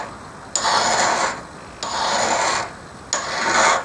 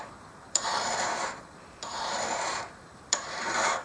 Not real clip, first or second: second